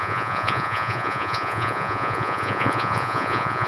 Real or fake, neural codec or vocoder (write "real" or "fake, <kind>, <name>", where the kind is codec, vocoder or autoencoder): fake, vocoder, Vocos